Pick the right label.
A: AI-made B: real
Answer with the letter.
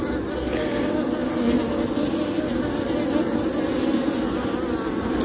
B